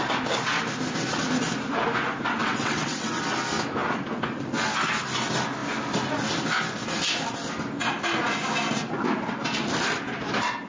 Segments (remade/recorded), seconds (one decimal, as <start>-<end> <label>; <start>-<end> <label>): 0.0-2.4 recorded; 2.4-3.2 remade; 3.2-10.7 recorded